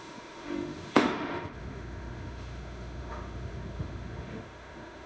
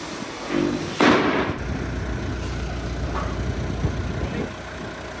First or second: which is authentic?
second